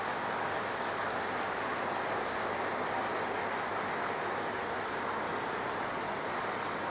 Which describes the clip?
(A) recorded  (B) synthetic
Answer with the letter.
A